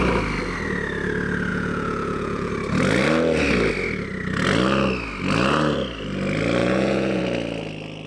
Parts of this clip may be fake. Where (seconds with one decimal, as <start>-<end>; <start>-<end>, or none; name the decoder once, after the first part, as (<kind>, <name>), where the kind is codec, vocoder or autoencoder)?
1.5-2.5 (vocoder, Vocos); 6.6-7.2